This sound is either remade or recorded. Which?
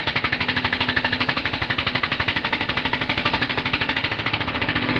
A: remade